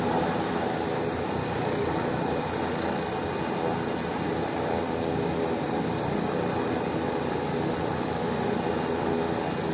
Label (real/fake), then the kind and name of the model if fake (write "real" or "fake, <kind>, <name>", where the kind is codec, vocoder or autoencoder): real